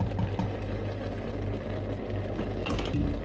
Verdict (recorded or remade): recorded